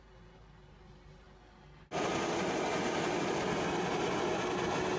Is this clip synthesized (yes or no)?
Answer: no